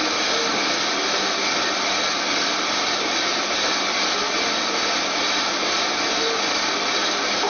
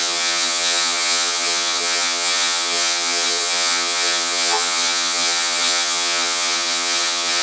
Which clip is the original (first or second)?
first